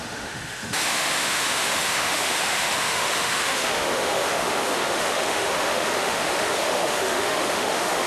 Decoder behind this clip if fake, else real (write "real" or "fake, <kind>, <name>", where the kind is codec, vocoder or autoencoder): fake, autoencoder, DAC-VAE